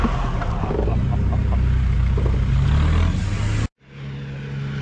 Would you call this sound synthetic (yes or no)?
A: no